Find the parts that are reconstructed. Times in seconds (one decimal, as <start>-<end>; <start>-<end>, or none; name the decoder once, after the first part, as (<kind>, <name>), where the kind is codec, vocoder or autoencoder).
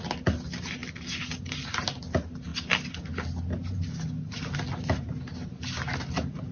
none